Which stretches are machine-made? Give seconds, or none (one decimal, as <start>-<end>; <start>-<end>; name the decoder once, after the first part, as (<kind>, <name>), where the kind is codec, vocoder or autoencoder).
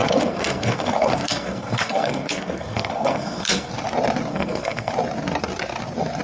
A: 0.0-3.7 (codec, SNAC); 4.3-4.9